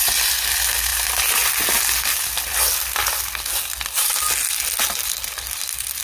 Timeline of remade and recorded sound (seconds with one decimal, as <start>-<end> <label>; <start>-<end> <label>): 0.0-6.0 recorded